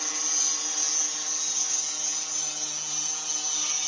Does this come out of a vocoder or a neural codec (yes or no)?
no